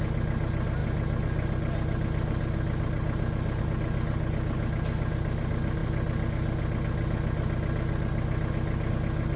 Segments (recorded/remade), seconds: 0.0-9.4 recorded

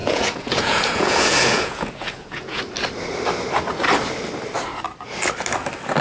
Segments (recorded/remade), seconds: 0.0-2.6 remade; 2.6-6.0 recorded

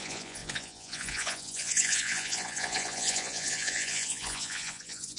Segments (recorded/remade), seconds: 0.0-5.2 remade